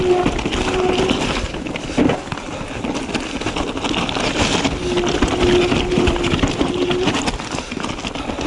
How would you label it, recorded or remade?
recorded